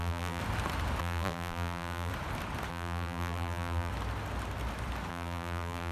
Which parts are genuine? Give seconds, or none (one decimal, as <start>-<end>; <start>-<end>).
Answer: 0.4-1.0; 2.1-2.7; 3.9-5.1